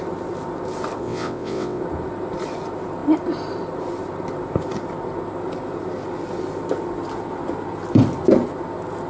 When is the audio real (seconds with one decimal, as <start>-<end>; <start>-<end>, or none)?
0.0-1.0; 1.8-9.1